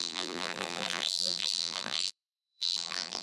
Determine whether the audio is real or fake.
fake